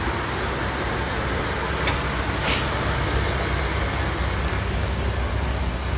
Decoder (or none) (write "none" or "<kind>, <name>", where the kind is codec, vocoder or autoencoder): none